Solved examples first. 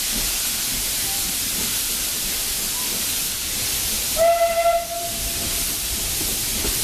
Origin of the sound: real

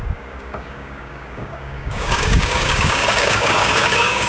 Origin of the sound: fake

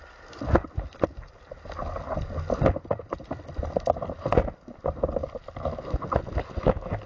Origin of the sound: real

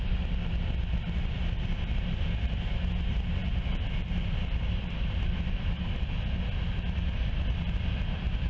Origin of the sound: real